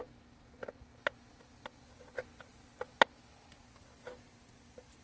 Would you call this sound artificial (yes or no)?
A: no